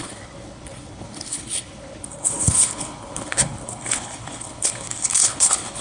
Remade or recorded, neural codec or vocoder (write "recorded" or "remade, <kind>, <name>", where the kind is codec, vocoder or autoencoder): remade, codec, HILCodec